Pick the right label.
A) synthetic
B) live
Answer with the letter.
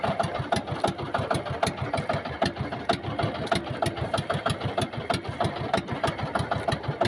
B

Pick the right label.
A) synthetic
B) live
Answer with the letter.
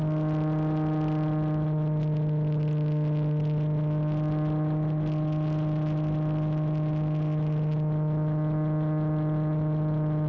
B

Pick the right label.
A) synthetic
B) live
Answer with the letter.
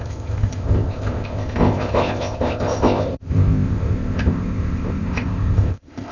A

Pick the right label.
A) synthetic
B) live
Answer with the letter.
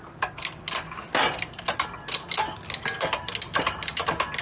B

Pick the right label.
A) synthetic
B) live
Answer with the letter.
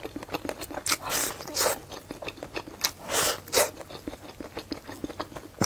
B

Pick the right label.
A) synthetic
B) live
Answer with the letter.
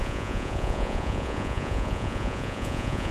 A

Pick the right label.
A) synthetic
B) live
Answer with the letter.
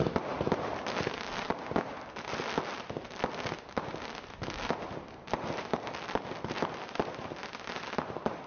B